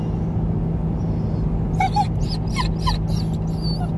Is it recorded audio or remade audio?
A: recorded